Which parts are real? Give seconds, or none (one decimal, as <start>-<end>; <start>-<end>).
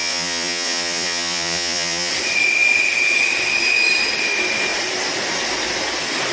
2.1-6.3